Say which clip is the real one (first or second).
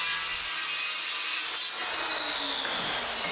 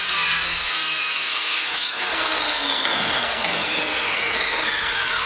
first